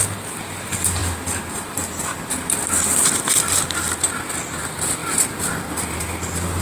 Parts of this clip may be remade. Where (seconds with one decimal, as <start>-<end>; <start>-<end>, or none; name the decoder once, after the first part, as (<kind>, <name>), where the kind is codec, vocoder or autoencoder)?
none